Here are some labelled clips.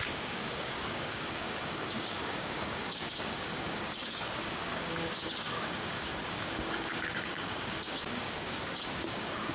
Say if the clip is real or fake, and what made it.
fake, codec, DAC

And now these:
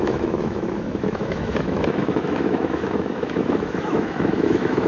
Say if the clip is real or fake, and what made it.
fake, autoencoder, DAC-VAE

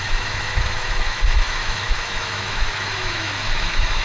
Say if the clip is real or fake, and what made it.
fake, autoencoder, DAC-VAE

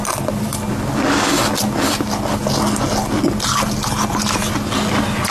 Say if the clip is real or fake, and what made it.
real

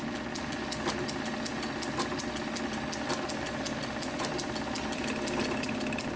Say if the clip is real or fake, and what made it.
real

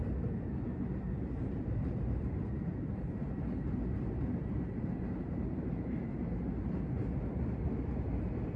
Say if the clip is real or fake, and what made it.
fake, vocoder, BigVGAN v2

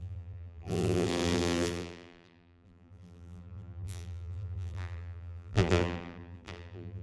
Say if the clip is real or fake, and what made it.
fake, vocoder, BigVGAN v2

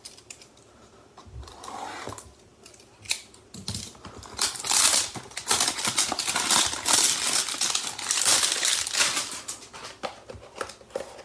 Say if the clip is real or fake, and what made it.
real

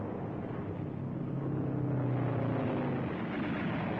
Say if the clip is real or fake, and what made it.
real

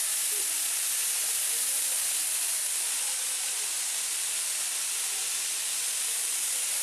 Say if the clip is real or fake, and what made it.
real